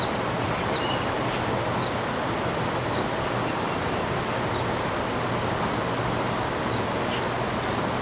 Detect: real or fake real